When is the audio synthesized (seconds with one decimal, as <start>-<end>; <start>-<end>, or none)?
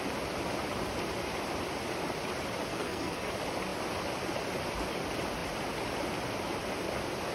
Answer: 2.7-3.3